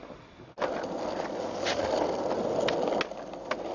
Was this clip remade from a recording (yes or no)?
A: no